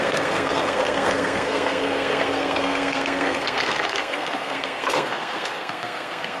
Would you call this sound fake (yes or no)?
yes